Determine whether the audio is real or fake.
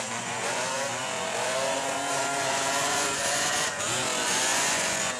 fake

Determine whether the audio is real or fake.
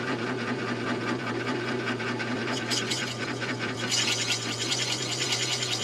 fake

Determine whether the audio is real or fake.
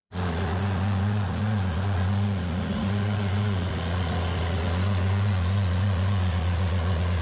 fake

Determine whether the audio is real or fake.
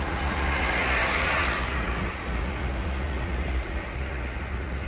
fake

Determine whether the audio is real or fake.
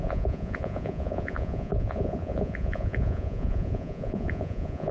fake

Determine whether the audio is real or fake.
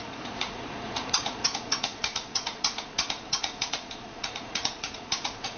fake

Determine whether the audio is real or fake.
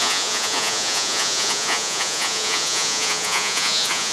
fake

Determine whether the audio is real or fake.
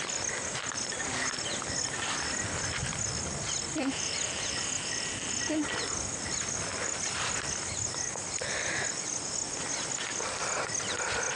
real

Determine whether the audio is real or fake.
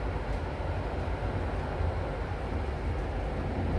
real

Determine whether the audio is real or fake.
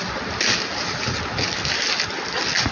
real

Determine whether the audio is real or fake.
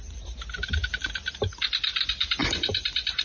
real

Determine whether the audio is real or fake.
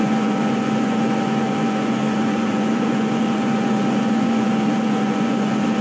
fake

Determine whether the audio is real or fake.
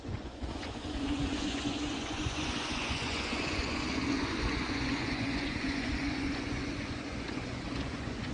fake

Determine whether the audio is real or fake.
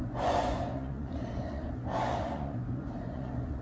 fake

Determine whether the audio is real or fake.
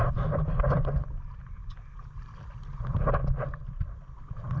real